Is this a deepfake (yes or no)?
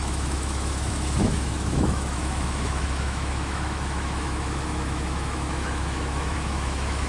yes